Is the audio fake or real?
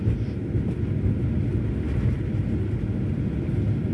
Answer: real